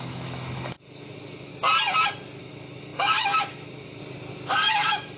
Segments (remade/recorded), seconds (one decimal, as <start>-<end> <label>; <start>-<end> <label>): 0.0-1.5 remade; 1.5-2.4 recorded; 2.4-4.0 remade; 4.0-4.5 recorded; 4.5-5.2 remade